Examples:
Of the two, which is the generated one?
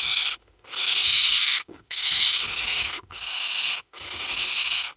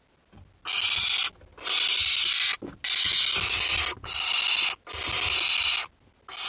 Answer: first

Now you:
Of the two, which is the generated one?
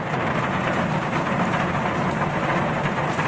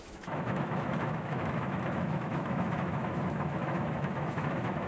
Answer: second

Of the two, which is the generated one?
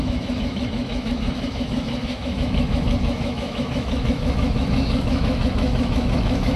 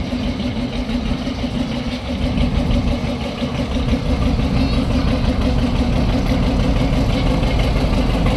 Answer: first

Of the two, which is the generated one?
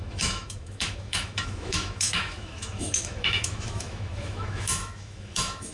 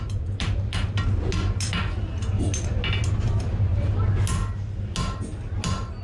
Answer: first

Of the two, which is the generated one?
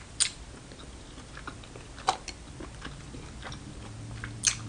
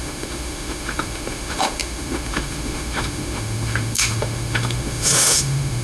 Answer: second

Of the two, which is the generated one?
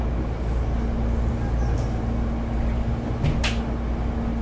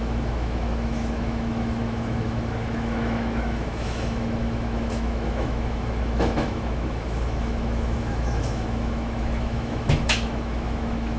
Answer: second